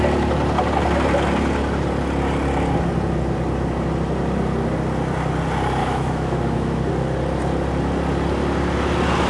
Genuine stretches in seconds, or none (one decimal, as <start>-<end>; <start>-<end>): 0.0-5.8; 6.9-9.3